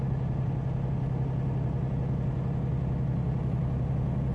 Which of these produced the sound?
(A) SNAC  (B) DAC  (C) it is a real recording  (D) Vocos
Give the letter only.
C